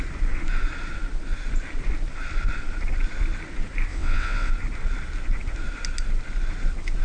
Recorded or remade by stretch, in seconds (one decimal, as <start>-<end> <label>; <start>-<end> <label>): 0.0-3.9 recorded; 3.9-4.5 remade; 4.5-7.0 recorded